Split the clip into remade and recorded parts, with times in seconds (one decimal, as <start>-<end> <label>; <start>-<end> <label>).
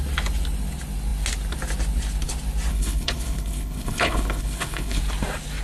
0.0-2.7 recorded; 2.7-5.0 remade; 5.0-5.6 recorded